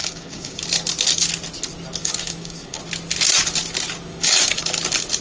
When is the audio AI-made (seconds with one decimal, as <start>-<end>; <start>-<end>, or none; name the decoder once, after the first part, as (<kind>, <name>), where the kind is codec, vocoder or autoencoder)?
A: 0.0-0.6 (codec, DAC); 2.0-2.8; 4.1-4.6